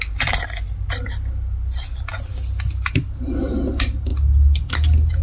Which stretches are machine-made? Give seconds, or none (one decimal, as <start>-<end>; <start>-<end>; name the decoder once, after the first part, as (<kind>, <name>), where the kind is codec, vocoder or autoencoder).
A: none